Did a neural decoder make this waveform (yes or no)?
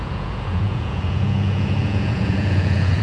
yes